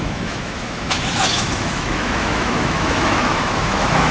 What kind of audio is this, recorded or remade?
remade